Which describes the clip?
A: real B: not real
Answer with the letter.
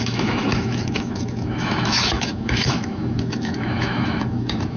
B